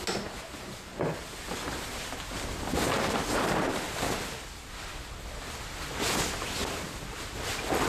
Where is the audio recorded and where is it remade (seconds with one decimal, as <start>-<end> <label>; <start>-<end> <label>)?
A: 0.0-7.9 recorded